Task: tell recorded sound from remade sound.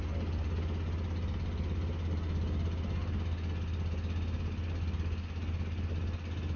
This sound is recorded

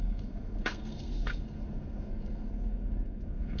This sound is remade